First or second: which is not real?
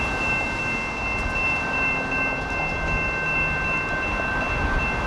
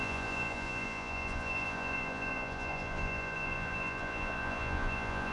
second